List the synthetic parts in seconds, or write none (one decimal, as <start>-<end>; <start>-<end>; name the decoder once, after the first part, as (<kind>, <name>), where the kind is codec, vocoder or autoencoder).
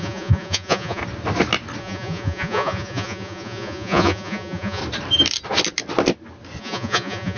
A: 0.0-1.0 (vocoder, Vocos); 1.8-4.8; 6.6-7.4